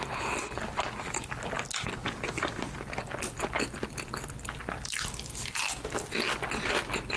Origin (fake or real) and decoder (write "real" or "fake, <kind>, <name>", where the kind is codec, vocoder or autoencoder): real